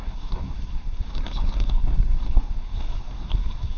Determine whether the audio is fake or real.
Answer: fake